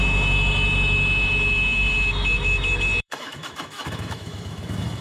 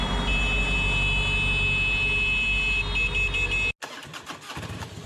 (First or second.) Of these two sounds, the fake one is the first